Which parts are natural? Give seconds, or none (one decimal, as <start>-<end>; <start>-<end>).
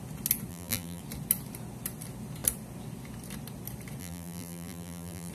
0.0-0.5; 1.0-4.0